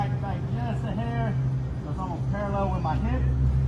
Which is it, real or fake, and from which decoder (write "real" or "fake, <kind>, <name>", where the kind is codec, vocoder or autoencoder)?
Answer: real